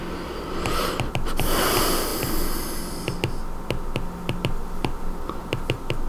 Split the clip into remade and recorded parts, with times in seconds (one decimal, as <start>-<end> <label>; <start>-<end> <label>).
0.0-6.1 recorded